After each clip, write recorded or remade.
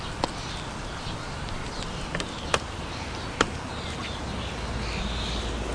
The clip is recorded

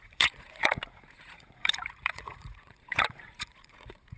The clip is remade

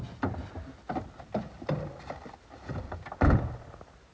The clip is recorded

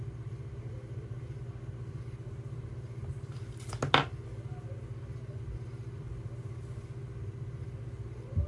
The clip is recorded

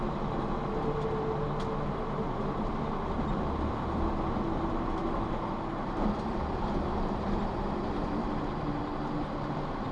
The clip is recorded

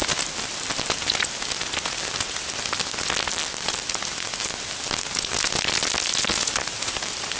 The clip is recorded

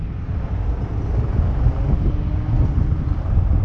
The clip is recorded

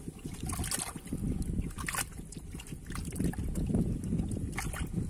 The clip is recorded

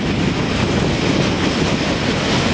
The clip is recorded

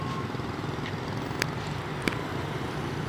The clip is remade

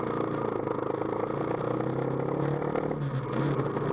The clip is recorded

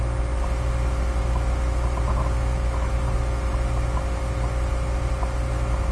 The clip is recorded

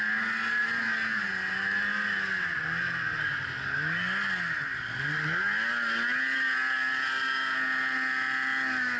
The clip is recorded